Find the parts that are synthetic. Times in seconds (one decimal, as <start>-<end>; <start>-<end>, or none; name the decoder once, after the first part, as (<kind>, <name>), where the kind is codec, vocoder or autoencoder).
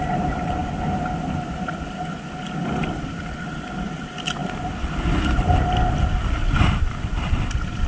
none